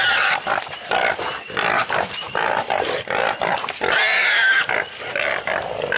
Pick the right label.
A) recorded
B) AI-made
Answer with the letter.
B